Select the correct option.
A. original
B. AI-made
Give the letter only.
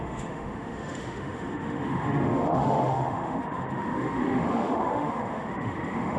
B